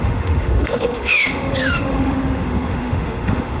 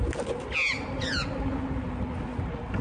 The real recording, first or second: second